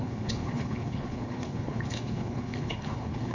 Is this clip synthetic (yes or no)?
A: yes